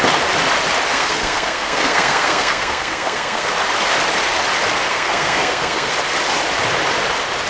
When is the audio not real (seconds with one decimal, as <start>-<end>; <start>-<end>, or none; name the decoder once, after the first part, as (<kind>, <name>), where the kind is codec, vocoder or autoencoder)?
0.9-3.5 (codec, SNAC); 4.9-5.9